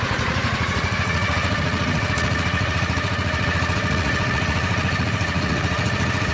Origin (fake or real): fake